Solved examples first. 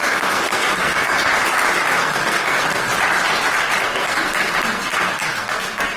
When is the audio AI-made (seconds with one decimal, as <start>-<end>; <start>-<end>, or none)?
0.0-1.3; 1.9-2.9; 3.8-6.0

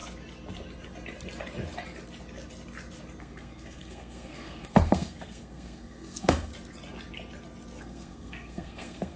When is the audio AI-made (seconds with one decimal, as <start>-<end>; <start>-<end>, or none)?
3.2-6.5; 7.8-9.2

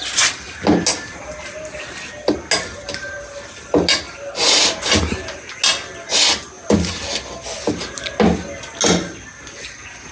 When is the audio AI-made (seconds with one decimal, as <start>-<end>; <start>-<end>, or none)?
none

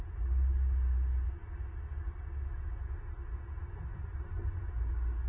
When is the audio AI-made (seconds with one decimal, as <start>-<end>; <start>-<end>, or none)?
none

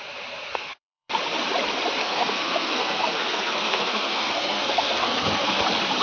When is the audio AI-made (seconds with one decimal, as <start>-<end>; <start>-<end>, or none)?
0.5-1.1; 2.0-5.6

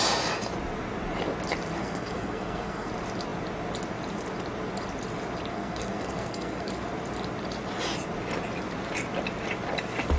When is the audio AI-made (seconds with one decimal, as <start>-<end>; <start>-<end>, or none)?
1.8-2.9; 5.5-6.7

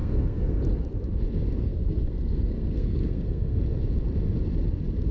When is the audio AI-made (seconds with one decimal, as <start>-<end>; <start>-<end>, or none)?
0.0-0.6; 1.6-3.6